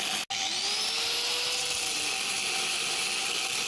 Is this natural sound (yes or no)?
yes